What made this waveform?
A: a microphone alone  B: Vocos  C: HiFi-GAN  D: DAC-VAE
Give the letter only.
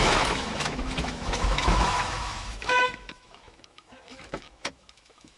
D